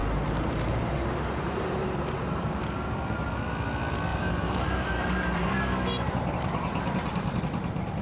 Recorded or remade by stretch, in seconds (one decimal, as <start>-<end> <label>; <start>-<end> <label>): 0.0-2.6 remade; 2.6-4.1 recorded; 4.1-7.4 remade; 7.4-8.0 recorded